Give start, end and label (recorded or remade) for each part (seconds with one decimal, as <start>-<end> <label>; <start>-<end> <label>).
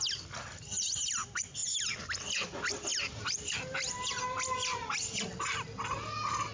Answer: 0.0-6.5 recorded